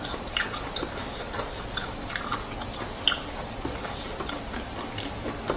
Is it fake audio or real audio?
real